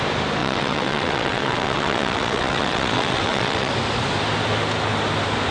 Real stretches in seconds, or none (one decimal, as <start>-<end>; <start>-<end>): 0.0-0.4; 3.7-5.5